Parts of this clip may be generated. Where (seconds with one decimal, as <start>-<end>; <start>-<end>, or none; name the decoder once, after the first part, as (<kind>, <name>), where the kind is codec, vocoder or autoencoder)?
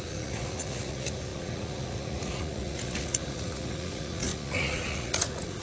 0.0-5.6 (vocoder, Vocos)